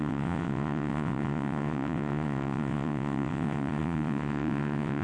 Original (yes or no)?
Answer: no